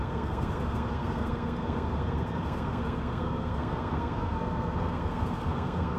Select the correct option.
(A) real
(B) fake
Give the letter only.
B